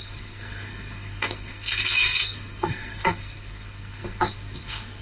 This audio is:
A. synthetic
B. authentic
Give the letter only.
A